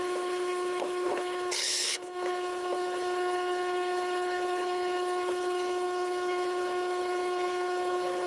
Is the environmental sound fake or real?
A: fake